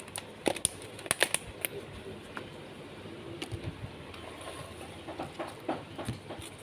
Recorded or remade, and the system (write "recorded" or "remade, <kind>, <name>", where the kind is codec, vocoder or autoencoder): recorded